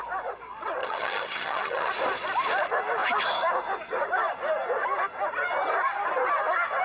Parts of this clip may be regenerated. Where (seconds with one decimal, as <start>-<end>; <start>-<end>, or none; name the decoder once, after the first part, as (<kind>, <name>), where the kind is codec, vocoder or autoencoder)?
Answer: 0.8-1.9 (vocoder, HiFi-GAN)